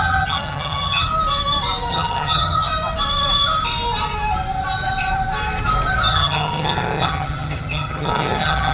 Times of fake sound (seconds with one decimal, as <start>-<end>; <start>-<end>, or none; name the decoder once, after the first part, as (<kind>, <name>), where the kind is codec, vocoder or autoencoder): 0.0-1.1 (vocoder, HiFi-GAN); 1.9-2.7; 6.1-8.7